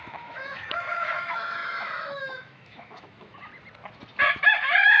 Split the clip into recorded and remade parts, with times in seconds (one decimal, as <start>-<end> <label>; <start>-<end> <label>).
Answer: 0.0-3.5 remade; 3.5-4.4 recorded; 4.4-5.0 remade